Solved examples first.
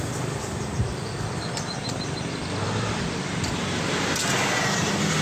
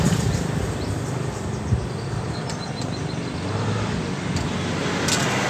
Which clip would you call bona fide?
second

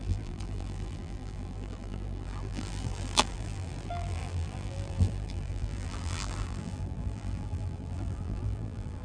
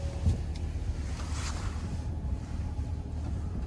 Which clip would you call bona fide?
second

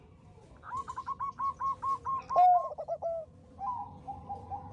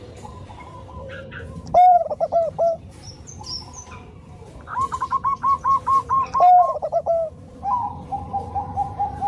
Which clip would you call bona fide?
first